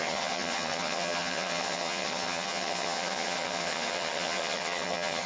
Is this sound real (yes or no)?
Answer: no